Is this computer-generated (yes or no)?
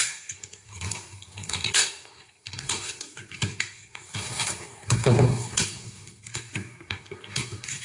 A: yes